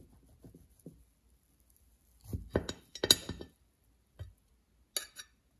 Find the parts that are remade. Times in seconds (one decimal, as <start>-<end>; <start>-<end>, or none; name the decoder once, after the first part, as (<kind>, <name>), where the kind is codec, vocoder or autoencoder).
none